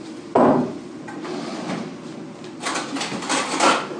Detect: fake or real real